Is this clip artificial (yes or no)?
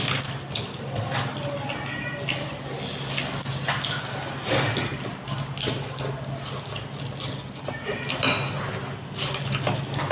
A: no